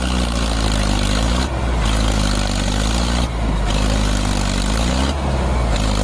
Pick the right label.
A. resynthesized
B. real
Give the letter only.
B